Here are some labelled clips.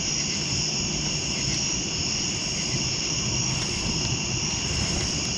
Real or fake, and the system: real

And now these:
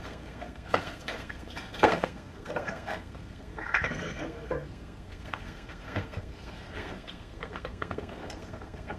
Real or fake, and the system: fake, codec, SNAC